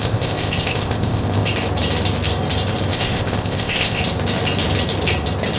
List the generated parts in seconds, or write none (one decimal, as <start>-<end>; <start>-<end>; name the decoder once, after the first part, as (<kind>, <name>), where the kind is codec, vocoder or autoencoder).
0.0-1.5 (codec, ZipCodec); 2.9-4.0